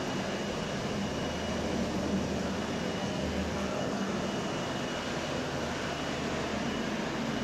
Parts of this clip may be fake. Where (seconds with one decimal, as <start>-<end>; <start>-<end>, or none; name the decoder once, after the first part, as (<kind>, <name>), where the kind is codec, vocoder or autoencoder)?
3.0-4.1 (codec, SNAC)